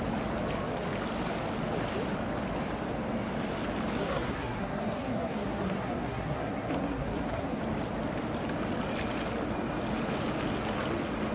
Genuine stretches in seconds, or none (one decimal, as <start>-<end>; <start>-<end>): 0.0-4.0; 7.6-11.3